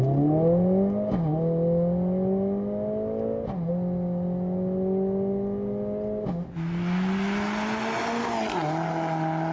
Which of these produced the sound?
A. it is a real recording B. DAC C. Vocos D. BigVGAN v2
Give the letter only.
A